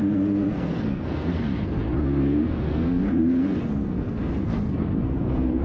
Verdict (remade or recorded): remade